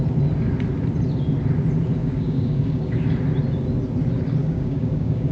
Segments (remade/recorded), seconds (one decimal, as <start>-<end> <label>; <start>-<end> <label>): 0.0-2.0 recorded; 2.0-3.1 remade; 3.1-4.4 recorded; 4.4-5.3 remade